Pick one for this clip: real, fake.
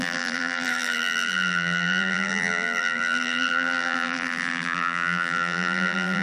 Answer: fake